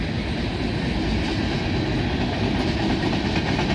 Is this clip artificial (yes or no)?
no